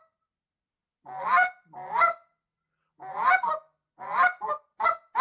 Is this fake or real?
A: real